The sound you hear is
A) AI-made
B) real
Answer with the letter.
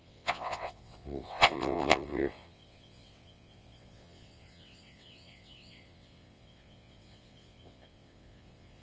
A